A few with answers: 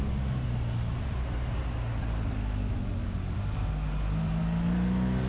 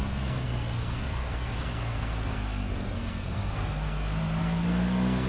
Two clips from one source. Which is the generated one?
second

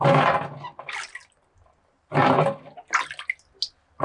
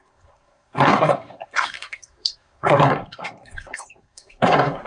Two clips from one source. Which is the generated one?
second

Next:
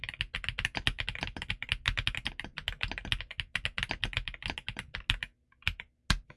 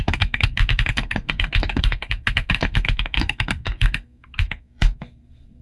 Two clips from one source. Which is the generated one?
second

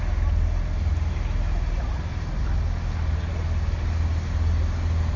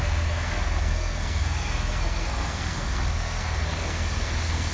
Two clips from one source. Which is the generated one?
second